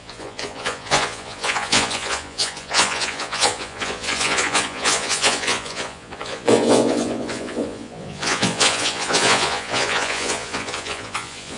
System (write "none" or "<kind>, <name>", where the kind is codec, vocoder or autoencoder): vocoder, Vocos